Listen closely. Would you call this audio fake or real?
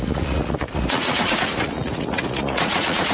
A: fake